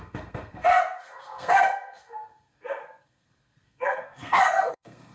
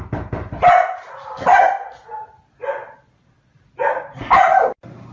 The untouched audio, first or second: second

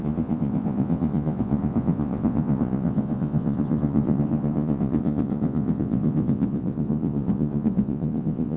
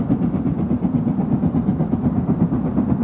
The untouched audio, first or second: second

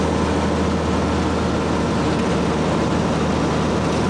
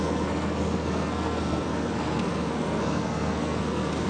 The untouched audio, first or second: first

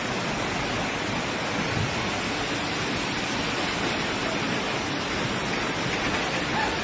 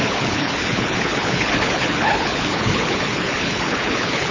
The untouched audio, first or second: first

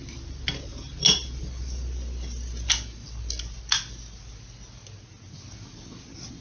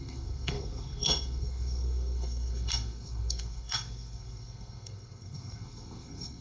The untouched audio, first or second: first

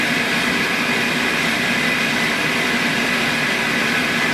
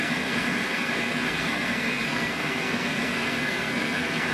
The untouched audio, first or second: first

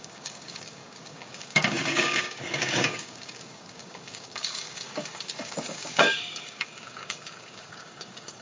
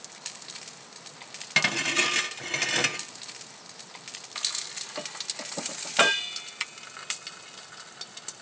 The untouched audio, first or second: second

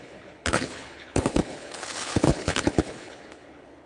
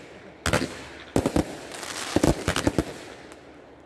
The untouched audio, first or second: second